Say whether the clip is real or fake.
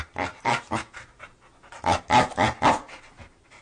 real